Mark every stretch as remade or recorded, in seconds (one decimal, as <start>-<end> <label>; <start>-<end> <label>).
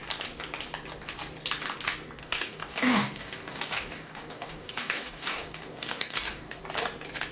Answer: 0.0-2.2 recorded; 2.2-6.6 remade; 6.6-7.3 recorded